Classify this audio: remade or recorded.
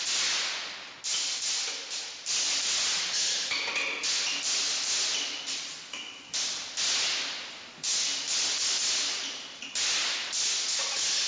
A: recorded